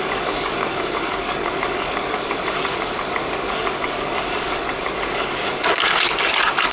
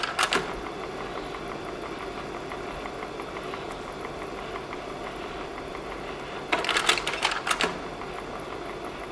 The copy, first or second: first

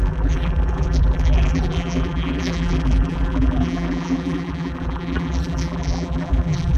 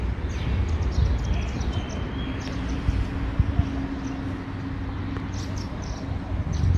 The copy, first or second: first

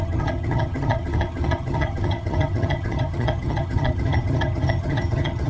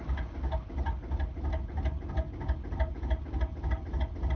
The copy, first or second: first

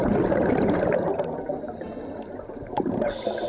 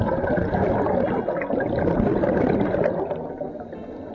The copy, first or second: first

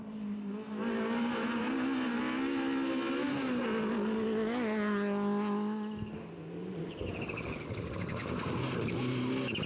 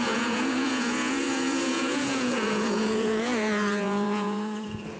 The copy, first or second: second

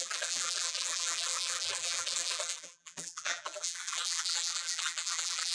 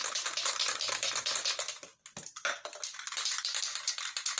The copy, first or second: first